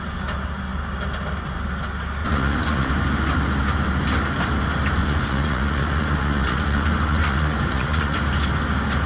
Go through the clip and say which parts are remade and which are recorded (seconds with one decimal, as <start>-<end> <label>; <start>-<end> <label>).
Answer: 0.0-2.2 recorded; 2.2-2.9 remade; 2.9-5.0 recorded; 5.0-8.2 remade; 8.2-9.1 recorded